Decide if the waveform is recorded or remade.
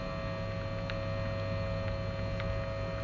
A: recorded